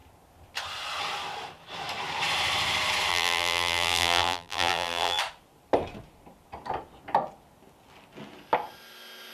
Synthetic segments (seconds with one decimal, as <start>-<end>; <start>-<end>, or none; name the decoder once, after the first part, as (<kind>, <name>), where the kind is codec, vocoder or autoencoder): 3.1-5.2 (vocoder, BigVGAN v2)